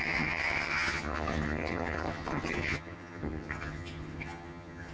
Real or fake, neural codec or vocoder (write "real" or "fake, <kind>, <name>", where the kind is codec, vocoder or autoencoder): fake, vocoder, HiFi-GAN